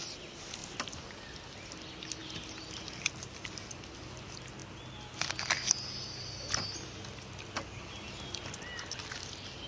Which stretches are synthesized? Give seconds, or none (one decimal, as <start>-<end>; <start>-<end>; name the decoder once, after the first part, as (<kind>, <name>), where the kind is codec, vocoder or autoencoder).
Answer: none